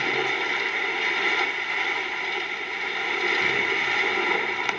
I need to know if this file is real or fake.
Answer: real